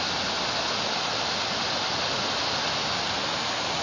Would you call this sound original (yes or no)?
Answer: yes